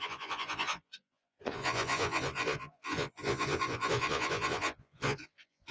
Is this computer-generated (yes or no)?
yes